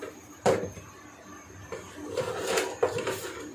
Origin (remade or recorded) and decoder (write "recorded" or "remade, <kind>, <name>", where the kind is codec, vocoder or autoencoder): recorded